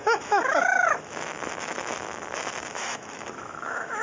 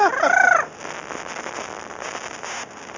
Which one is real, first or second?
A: second